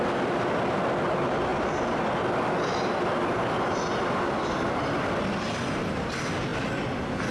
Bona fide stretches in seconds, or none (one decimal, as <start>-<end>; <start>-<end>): 0.0-7.3